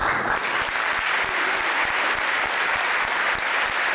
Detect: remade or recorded recorded